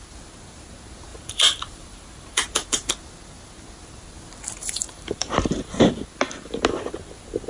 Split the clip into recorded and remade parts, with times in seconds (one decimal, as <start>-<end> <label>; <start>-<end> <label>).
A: 0.0-1.1 recorded; 1.1-2.9 remade; 2.9-4.6 recorded; 4.6-5.9 remade; 5.9-7.5 recorded